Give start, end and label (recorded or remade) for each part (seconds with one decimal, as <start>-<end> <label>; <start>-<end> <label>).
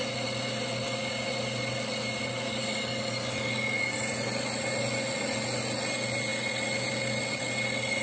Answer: 0.0-8.0 recorded